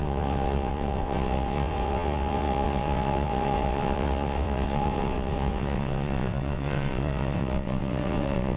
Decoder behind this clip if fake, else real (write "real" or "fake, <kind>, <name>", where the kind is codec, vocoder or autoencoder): fake, vocoder, WaveNeXt